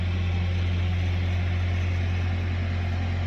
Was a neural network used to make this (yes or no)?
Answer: no